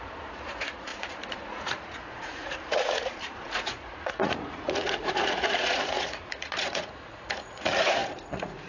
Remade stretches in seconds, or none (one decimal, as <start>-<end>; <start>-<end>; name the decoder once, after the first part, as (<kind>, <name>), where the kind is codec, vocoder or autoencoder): 0.0-8.7 (vocoder, Vocos)